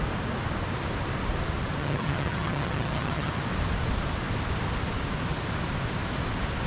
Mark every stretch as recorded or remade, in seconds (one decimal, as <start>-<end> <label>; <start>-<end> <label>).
0.0-1.8 recorded; 1.8-3.3 remade; 3.3-6.7 recorded